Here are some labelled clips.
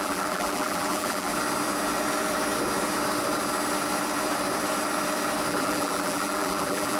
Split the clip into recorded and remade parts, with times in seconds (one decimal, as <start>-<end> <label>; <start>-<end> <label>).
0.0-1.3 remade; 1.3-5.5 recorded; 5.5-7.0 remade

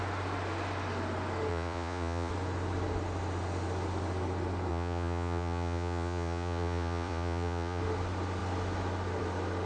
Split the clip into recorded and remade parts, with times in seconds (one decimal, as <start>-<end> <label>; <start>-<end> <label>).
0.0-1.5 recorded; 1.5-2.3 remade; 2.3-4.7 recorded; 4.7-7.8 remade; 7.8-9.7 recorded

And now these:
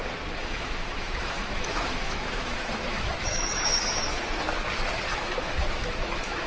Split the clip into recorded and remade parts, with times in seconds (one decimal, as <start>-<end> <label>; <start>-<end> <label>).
0.0-0.4 recorded; 0.4-4.3 remade; 4.3-5.1 recorded; 5.1-6.5 remade

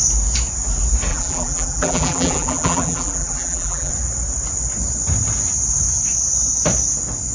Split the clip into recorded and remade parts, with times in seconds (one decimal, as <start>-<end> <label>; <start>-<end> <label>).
0.0-1.1 recorded; 1.1-3.9 remade; 3.9-7.3 recorded

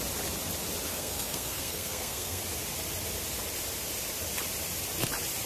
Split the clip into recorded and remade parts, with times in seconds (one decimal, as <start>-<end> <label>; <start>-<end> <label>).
0.0-0.9 recorded; 0.9-2.4 remade; 2.4-5.5 recorded

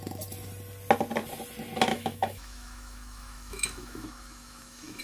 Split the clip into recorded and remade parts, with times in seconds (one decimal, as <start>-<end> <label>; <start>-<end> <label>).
0.0-1.9 recorded; 1.9-5.0 remade